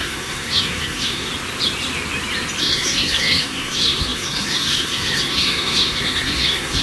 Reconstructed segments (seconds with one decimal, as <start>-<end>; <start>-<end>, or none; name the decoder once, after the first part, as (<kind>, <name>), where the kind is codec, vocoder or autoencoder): 0.0-1.3 (codec, SNAC); 2.6-6.8